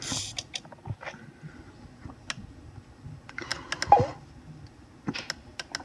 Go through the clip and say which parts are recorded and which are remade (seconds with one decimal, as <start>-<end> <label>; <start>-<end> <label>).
0.0-5.8 recorded